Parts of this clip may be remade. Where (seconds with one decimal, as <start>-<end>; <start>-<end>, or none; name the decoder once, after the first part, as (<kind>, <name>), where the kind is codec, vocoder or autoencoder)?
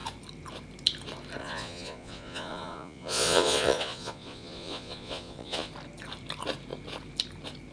1.4-5.7 (vocoder, Vocos)